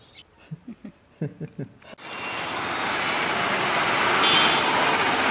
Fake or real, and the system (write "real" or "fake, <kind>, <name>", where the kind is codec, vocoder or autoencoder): real